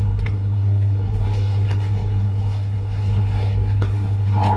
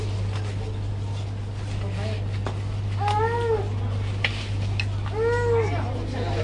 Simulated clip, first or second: first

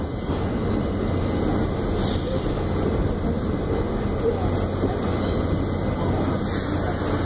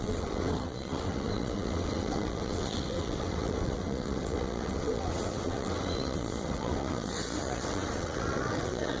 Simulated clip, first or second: second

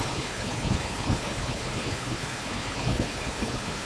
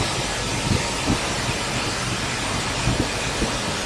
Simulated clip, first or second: first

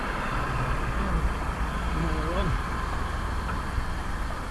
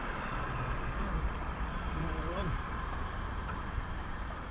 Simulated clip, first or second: second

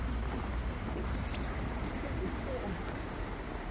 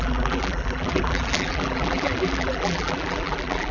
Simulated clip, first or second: second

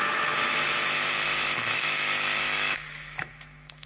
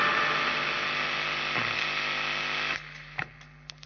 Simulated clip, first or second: first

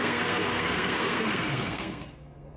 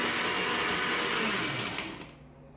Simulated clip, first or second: first